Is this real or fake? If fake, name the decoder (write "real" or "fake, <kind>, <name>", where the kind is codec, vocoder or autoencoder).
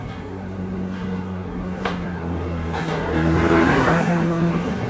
fake, codec, SNAC